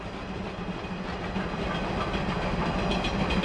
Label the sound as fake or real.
real